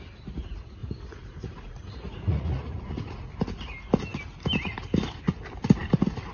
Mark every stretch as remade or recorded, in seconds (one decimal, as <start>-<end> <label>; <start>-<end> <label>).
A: 0.0-0.8 recorded; 0.8-3.3 remade; 3.3-6.3 recorded